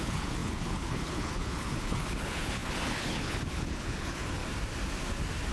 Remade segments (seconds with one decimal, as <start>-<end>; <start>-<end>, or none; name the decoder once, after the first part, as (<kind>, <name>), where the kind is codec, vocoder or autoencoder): 0.0-4.4 (codec, HILCodec)